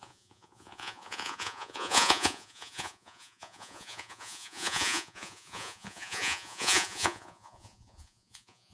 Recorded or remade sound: remade